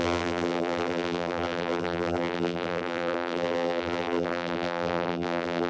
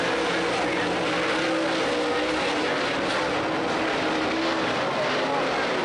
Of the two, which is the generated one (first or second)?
first